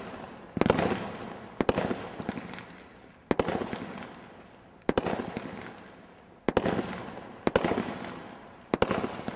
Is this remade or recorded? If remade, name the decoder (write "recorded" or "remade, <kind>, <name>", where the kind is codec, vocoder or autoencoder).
recorded